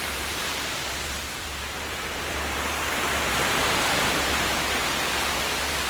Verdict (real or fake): fake